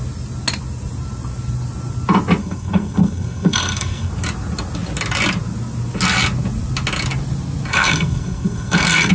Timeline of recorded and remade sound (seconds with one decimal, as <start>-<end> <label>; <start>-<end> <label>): 0.0-2.4 recorded; 2.4-4.1 remade; 4.1-7.7 recorded; 7.7-9.1 remade